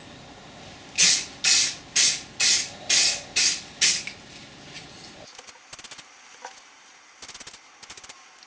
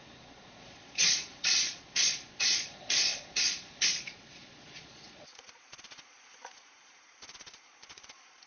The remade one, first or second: second